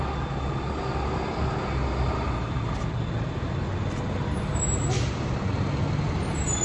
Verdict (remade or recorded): recorded